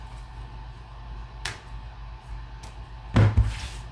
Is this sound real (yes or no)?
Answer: yes